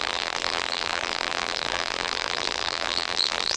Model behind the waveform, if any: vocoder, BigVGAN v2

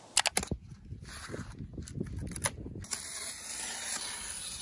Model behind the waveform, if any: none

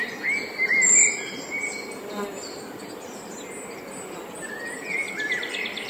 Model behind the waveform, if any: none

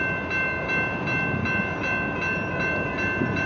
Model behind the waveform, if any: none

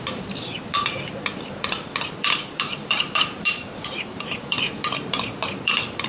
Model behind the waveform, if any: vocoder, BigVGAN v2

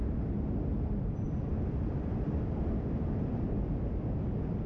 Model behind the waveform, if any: vocoder, BigVGAN v2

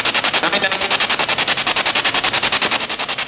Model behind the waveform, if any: none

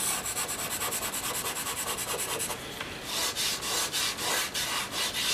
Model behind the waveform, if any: none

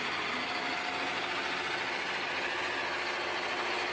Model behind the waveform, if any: none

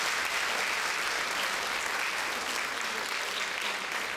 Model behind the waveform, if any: none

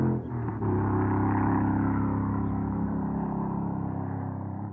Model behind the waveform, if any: none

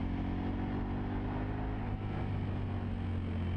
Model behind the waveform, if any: none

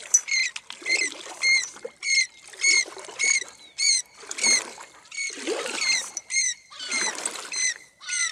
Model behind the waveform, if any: vocoder, BigVGAN v2